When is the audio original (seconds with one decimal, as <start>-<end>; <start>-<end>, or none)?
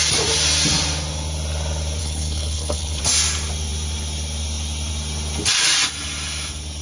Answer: 0.0-2.0; 3.0-6.8